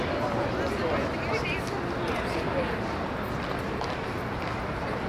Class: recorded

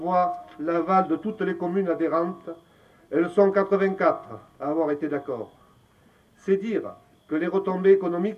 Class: recorded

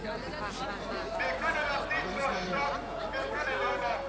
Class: recorded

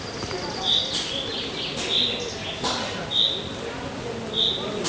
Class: recorded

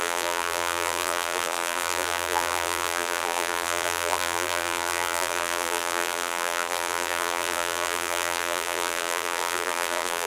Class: remade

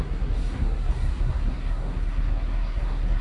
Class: remade